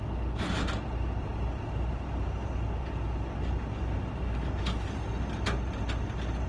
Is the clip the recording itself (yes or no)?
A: yes